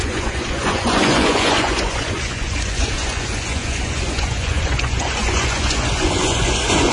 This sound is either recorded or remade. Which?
remade